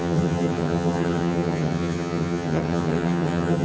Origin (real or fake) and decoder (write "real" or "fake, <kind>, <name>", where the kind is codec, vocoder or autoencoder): fake, vocoder, HiFi-GAN